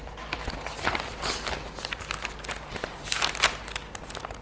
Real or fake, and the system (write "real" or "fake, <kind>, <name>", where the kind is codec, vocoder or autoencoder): real